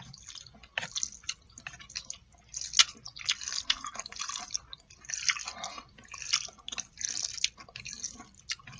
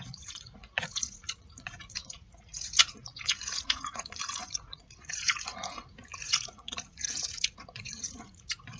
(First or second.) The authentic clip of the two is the first